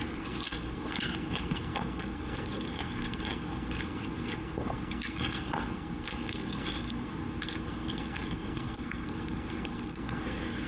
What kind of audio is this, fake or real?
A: fake